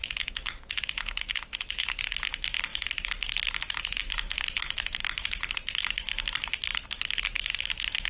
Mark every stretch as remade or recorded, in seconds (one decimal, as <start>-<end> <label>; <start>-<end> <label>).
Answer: 0.0-0.7 remade; 0.7-8.1 recorded